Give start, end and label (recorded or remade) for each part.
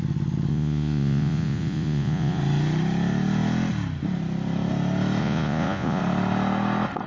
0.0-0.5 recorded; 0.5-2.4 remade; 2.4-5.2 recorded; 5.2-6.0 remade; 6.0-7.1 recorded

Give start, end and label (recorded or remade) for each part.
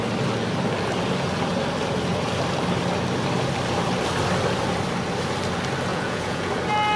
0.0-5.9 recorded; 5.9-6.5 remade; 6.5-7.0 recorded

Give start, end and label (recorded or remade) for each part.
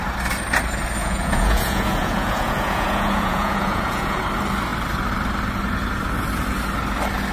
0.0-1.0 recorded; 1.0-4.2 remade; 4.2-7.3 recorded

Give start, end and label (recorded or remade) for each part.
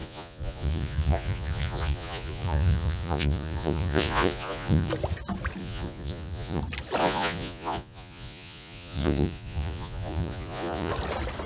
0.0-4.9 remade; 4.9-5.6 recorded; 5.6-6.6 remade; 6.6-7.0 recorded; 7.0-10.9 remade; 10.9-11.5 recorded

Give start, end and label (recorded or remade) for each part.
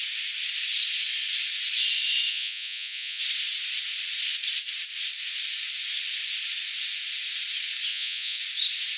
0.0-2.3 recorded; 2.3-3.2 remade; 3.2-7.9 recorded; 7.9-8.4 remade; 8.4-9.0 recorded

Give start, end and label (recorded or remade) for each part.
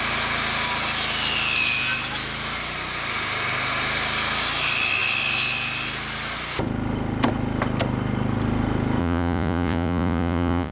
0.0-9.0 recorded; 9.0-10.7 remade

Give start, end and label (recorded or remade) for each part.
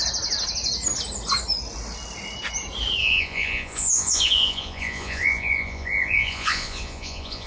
0.0-3.0 recorded; 3.0-7.5 remade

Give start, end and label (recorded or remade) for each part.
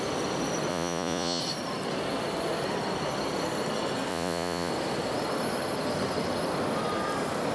0.0-0.7 recorded; 0.7-1.4 remade; 1.4-4.1 recorded; 4.1-4.7 remade; 4.7-7.5 recorded